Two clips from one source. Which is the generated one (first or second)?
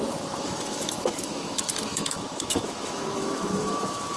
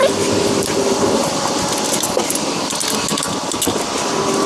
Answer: first